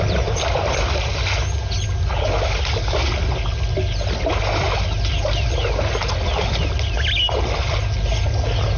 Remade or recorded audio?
recorded